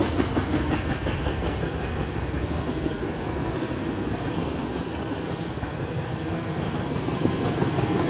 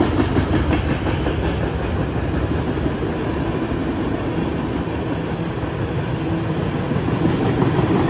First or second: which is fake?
first